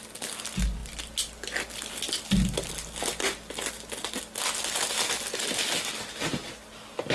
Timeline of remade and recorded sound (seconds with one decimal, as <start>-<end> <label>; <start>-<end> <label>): 0.0-7.1 recorded